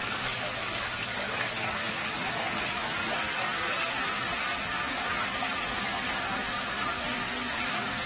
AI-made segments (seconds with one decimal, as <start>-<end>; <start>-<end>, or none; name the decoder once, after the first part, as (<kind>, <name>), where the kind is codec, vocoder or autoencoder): 0.0-8.1 (codec, DAC)